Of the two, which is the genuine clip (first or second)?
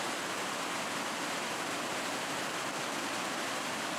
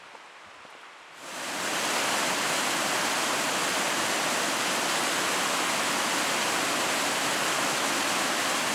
second